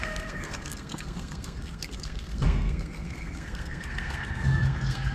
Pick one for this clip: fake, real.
fake